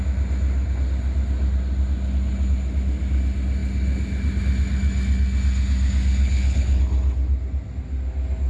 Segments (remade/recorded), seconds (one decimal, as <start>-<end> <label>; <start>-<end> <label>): 0.0-6.2 recorded; 6.2-6.8 remade; 6.8-8.5 recorded